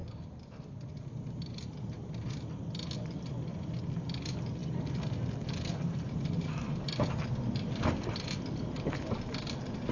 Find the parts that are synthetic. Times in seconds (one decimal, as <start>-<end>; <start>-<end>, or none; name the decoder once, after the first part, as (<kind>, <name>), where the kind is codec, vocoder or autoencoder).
0.0-1.2 (vocoder, BigVGAN v2); 4.6-8.4